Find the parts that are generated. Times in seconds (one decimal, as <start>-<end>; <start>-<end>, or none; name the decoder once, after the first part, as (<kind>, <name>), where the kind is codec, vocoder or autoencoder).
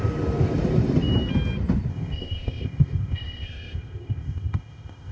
1.9-5.1 (codec, ZipCodec)